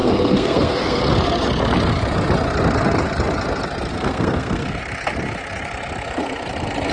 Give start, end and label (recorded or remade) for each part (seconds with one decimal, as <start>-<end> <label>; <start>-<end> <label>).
0.0-1.0 remade; 1.0-3.9 recorded; 3.9-4.8 remade; 4.8-6.9 recorded